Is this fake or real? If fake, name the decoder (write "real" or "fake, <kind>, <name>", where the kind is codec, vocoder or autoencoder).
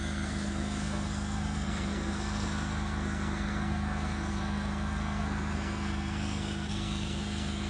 fake, codec, SNAC